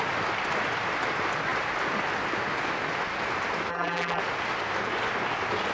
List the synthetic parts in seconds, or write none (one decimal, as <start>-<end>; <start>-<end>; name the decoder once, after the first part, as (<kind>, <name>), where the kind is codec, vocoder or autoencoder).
3.7-4.2 (vocoder, BigVGAN v2)